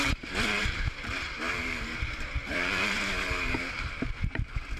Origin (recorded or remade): remade